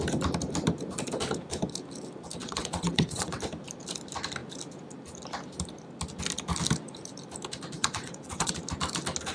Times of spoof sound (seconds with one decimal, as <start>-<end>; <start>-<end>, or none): 2.4-3.4; 7.8-8.5